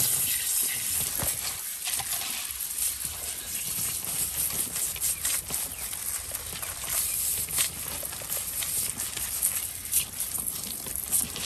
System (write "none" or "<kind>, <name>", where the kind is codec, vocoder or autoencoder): none